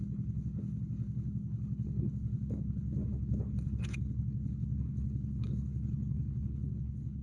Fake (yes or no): yes